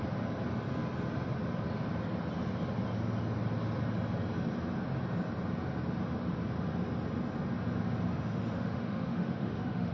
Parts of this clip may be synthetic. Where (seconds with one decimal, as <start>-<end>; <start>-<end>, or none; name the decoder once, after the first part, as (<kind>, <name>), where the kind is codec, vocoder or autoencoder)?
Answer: 8.1-9.9 (autoencoder, DAC-VAE)